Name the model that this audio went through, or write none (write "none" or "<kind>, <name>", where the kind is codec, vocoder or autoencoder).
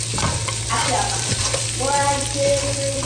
vocoder, BigVGAN v2